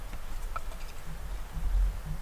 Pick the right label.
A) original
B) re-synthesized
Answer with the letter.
A